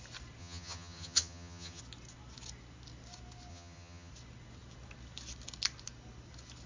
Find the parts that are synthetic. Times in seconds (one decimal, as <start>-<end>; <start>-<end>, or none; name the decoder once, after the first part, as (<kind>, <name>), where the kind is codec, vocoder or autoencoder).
0.4-1.8 (vocoder, HiFi-GAN); 3.5-4.1